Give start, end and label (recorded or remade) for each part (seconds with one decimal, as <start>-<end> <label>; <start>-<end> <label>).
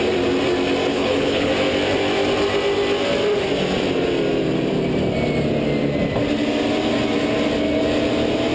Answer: 0.0-0.9 recorded; 0.9-1.5 remade; 1.5-8.5 recorded